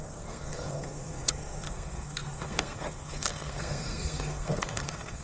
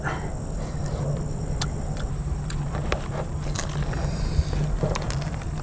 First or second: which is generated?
first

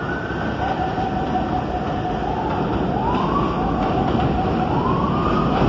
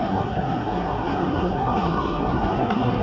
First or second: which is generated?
second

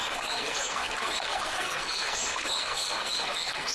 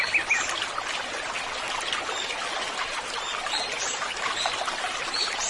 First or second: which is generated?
first